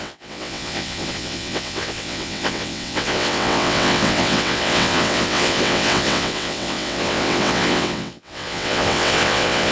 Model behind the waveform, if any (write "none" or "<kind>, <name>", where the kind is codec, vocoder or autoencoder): vocoder, WaveNeXt